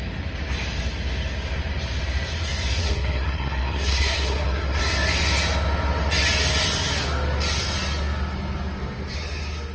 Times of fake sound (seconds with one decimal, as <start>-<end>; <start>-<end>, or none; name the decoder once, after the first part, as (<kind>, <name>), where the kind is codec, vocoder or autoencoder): 2.8-4.8 (codec, SNAC)